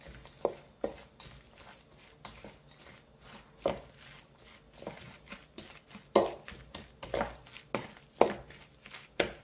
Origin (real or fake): real